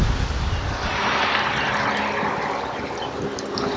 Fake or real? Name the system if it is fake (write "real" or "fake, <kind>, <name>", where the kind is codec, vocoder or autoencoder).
real